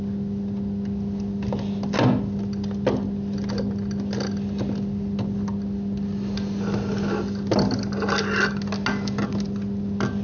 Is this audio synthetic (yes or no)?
no